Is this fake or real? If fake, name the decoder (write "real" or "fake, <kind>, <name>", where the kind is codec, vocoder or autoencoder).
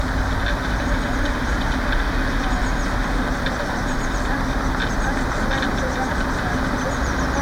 real